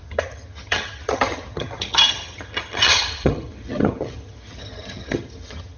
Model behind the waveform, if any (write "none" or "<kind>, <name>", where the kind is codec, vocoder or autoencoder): vocoder, HiFi-GAN